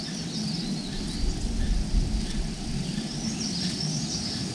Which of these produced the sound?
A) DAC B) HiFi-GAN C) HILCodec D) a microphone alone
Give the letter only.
D